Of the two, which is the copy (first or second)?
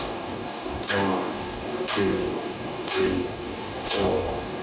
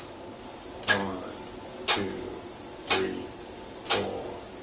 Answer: first